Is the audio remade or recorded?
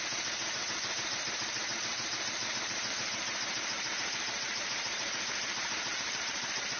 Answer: remade